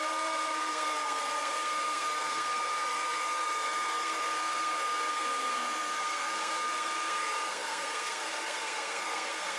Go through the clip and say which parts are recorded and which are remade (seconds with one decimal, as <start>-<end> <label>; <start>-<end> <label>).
0.0-9.6 remade